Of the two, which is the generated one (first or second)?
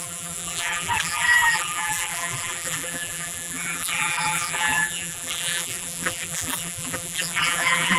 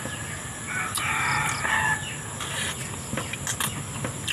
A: first